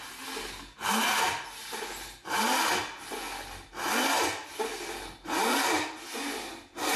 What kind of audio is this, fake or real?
real